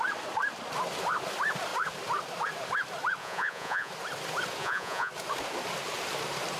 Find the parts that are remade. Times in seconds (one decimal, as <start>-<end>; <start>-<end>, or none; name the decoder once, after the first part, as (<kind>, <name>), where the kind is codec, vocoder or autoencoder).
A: 3.2-3.9 (vocoder, Vocos); 4.6-5.1